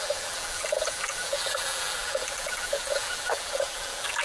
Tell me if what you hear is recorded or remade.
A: remade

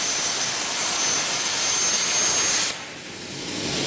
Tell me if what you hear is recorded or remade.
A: recorded